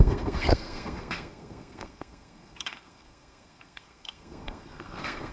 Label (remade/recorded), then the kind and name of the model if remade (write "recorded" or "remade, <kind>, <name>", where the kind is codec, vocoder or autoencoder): remade, codec, SNAC